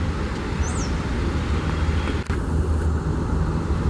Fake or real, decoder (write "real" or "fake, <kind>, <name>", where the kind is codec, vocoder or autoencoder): real